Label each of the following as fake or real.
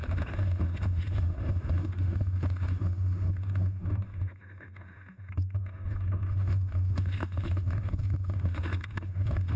fake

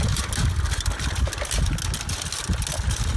real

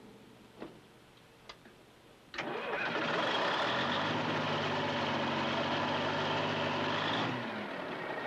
real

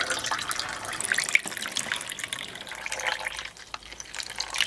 real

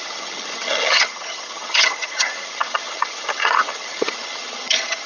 fake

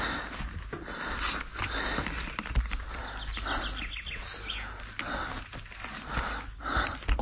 real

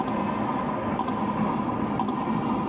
real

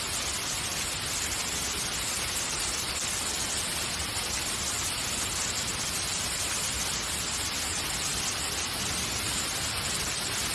real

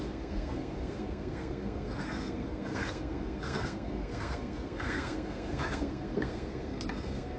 fake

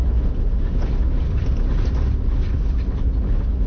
real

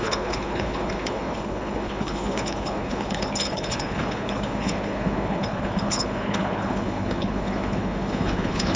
fake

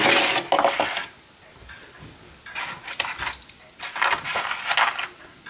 real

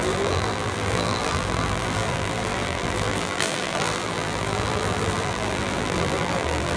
fake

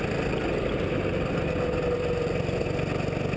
real